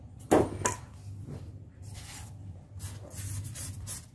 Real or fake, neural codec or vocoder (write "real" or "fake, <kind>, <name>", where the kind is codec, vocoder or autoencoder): real